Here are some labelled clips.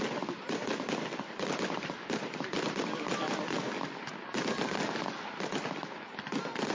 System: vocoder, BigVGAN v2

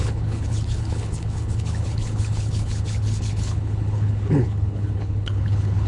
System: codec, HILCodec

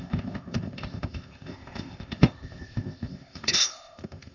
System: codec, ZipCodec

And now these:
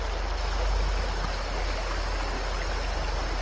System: none